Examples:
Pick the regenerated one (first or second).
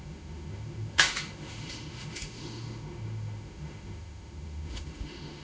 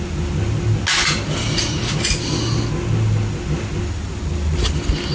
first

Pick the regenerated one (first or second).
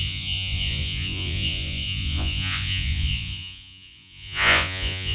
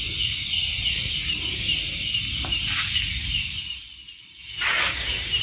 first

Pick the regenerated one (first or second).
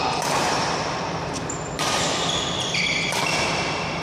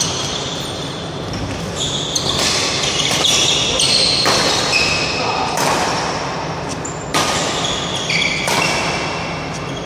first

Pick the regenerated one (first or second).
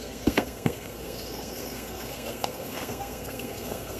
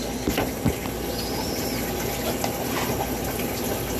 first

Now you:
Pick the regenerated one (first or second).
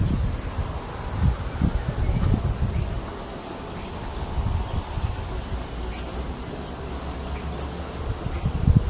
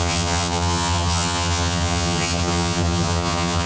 second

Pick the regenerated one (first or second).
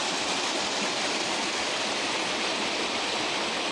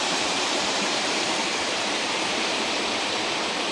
second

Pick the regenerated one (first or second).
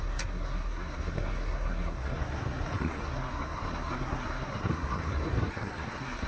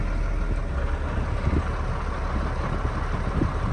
first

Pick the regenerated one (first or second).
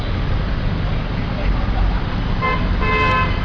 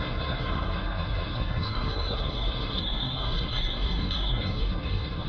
second